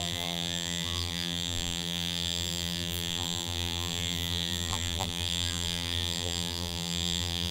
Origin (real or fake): fake